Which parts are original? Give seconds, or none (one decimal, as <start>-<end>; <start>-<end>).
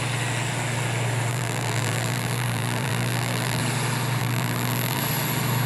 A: 0.0-1.3; 3.6-4.2; 5.0-5.7